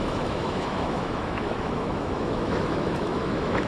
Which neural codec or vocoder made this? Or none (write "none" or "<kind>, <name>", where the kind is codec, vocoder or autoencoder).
autoencoder, DAC-VAE